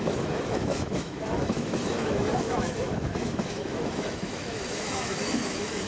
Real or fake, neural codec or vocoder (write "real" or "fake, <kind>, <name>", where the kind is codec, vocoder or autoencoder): fake, autoencoder, DAC-VAE